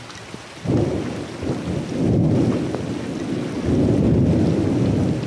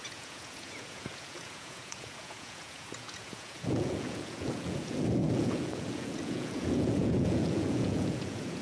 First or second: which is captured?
first